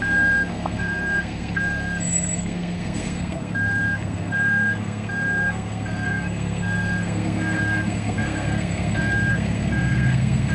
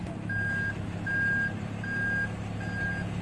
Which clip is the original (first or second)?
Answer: second